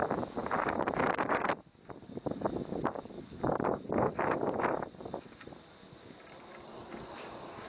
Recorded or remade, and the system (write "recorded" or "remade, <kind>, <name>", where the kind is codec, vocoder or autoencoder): recorded